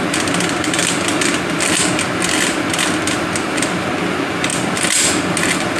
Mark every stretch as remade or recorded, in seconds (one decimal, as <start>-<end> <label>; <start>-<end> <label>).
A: 0.0-5.8 recorded